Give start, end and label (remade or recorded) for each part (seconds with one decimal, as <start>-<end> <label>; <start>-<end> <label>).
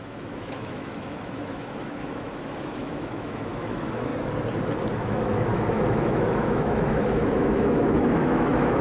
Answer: 0.0-4.1 remade; 4.1-4.9 recorded; 4.9-8.8 remade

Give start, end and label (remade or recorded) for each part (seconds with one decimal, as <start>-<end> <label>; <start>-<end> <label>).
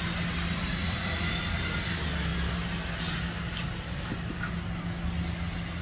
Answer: 0.0-0.8 recorded; 0.8-1.4 remade; 1.4-5.8 recorded